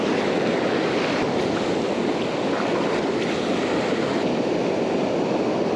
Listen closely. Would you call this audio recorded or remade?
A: recorded